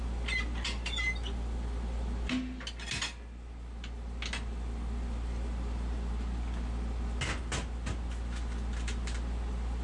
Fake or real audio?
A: real